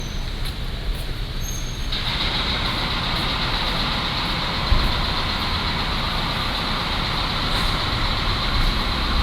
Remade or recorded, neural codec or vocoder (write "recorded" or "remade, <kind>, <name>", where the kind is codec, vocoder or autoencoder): recorded